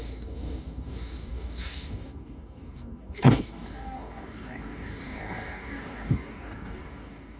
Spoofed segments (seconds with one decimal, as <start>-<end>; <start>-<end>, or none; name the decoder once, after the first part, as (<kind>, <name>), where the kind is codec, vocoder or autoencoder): 0.0-7.4 (codec, DAC)